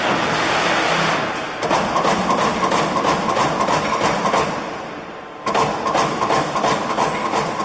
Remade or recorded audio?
recorded